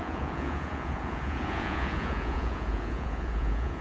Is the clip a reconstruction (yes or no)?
yes